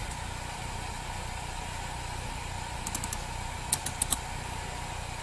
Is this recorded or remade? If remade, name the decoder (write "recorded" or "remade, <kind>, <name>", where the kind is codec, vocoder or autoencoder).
recorded